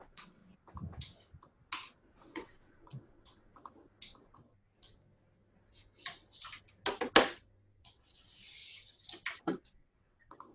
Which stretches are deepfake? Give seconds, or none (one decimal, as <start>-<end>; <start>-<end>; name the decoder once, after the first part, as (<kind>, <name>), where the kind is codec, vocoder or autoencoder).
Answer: 0.0-0.4 (vocoder, WaveNeXt); 2.2-3.5; 7.8-8.6; 9.4-10.5